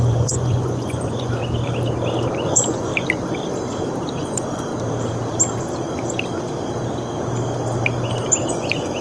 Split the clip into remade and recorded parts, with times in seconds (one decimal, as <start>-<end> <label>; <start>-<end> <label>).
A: 0.0-1.4 remade; 1.4-2.5 recorded; 2.5-2.9 remade; 2.9-4.2 recorded; 4.2-4.7 remade; 4.7-8.5 recorded; 8.5-9.0 remade